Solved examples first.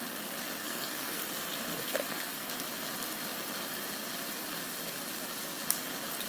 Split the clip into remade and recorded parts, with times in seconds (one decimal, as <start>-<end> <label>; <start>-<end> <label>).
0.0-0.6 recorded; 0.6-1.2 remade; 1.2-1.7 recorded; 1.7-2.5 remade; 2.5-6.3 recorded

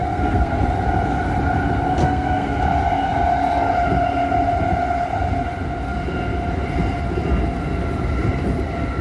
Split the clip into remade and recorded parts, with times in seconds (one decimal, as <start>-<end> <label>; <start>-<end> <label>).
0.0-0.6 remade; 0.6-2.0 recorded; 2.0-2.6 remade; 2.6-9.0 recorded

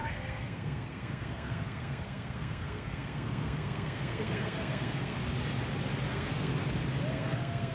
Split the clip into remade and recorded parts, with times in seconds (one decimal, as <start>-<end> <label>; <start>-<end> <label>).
0.0-5.2 remade; 5.2-6.1 recorded; 6.1-6.5 remade; 6.5-7.1 recorded; 7.1-7.7 remade

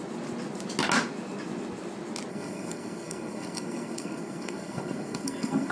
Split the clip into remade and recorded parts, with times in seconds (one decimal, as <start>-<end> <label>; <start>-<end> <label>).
0.0-2.3 recorded; 2.3-5.7 remade